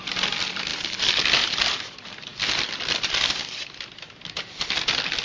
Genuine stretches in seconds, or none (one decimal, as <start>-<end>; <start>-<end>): 0.7-1.4; 2.3-4.2